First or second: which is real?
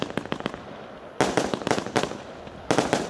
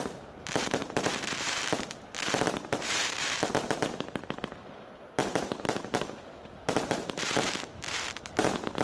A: first